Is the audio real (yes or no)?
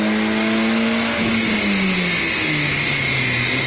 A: yes